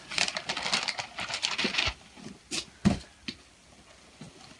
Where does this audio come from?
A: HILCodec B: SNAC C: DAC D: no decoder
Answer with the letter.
D